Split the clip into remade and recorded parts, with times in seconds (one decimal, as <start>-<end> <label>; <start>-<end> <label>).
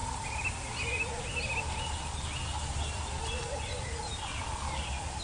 0.0-5.2 recorded